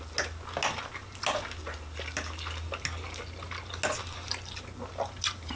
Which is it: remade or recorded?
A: recorded